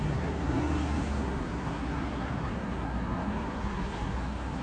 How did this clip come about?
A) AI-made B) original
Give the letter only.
A